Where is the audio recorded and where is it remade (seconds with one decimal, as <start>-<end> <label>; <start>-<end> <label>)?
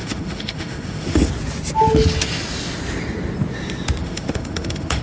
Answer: 0.0-1.3 remade; 1.3-4.0 recorded; 4.0-5.0 remade